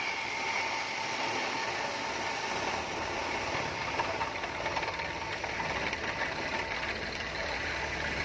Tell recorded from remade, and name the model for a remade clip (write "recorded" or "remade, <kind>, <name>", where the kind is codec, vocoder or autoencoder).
recorded